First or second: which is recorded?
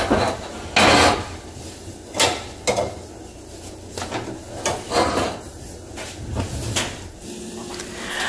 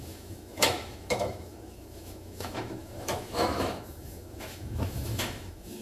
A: first